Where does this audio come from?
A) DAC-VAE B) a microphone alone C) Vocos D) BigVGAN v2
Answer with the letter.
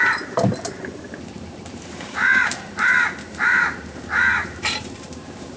D